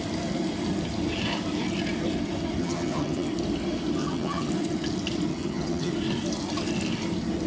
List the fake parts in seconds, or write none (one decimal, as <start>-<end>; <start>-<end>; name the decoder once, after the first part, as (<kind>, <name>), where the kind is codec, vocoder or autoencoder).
2.6-3.3 (vocoder, HiFi-GAN); 4.0-4.5; 5.3-5.9